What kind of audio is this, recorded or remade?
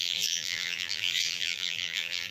remade